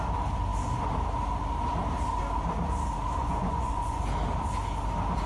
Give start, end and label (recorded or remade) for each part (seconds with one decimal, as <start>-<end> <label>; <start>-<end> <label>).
0.0-3.2 recorded; 3.2-4.0 remade; 4.0-5.3 recorded